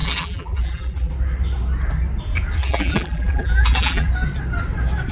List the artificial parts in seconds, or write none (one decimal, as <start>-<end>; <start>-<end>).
0.0-1.1; 2.6-4.1